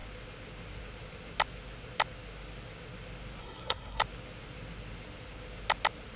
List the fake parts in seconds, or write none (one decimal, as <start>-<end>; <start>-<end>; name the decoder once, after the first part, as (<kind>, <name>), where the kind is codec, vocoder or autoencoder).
3.4-4.0 (codec, SNAC)